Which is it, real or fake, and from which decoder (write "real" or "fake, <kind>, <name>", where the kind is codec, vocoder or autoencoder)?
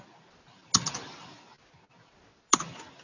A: real